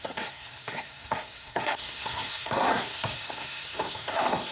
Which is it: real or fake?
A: fake